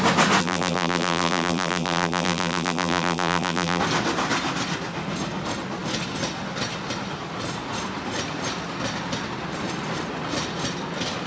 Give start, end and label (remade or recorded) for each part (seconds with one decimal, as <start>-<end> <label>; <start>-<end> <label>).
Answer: 0.0-0.4 recorded; 0.4-3.8 remade; 3.8-11.3 recorded